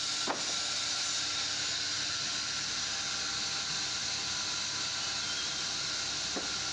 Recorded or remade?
recorded